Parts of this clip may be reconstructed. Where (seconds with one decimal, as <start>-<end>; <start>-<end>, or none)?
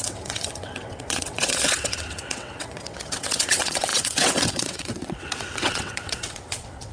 0.0-6.9